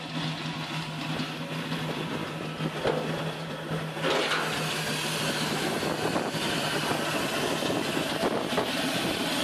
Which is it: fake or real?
real